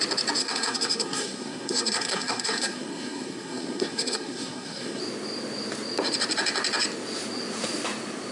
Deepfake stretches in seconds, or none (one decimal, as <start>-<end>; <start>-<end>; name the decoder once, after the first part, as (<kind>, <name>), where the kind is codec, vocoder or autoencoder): 0.4-5.0 (codec, SNAC)